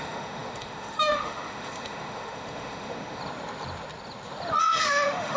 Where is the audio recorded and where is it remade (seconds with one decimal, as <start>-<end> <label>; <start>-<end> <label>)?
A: 0.0-3.2 remade; 3.2-4.6 recorded; 4.6-5.4 remade